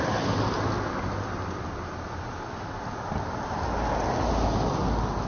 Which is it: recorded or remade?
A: recorded